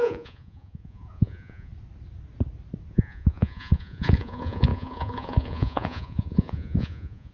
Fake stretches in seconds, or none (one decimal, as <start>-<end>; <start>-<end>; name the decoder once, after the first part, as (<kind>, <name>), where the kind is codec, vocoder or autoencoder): 0.0-1.7 (vocoder, Vocos); 2.9-7.3